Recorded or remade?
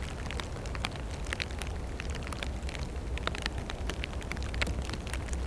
recorded